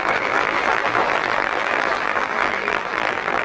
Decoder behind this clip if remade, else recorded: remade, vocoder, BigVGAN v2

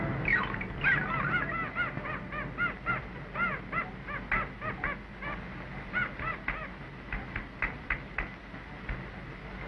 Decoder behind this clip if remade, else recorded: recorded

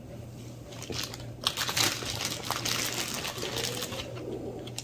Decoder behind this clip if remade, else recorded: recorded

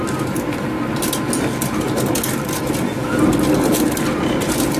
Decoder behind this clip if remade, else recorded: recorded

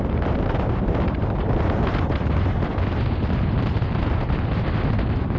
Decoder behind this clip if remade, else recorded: recorded